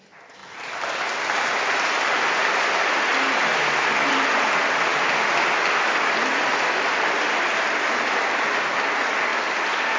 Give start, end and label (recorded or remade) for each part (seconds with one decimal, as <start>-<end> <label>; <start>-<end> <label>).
0.0-10.0 recorded